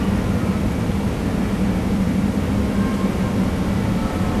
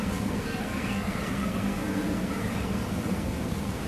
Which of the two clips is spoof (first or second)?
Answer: second